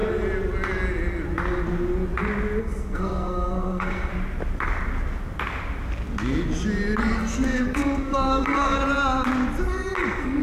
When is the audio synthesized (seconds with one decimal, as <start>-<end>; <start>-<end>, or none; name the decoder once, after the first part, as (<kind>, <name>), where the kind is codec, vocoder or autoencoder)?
2.6-4.1 (codec, SNAC); 7.0-8.8; 9.6-10.4